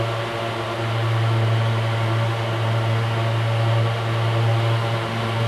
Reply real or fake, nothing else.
real